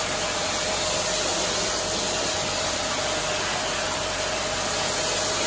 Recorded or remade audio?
recorded